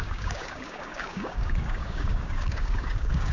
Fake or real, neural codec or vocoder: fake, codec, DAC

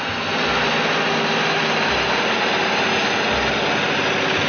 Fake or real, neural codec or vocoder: real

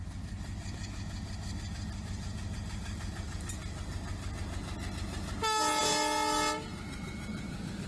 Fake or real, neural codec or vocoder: real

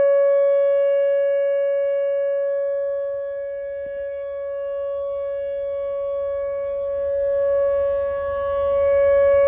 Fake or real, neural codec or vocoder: real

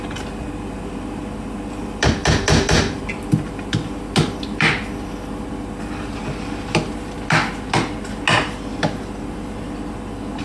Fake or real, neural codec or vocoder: real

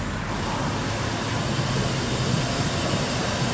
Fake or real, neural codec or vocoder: real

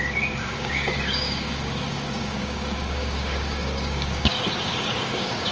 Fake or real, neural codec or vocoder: fake, codec, DAC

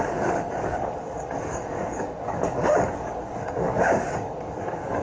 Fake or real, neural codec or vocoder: fake, codec, DAC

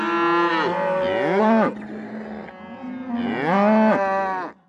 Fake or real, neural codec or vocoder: real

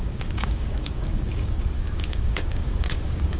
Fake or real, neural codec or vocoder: fake, codec, DAC